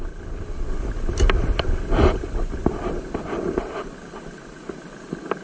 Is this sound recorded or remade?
remade